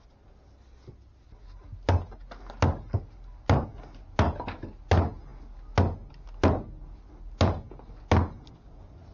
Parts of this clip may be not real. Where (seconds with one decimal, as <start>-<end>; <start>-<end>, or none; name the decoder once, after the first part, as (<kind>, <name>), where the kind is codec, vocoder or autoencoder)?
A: none